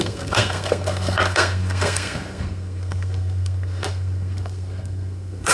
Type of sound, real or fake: fake